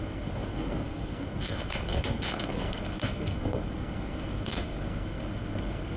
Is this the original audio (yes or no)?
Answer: no